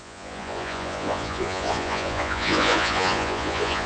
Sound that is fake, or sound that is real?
fake